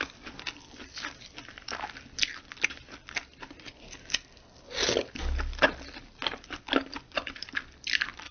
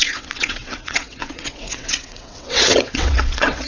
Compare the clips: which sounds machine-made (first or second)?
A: second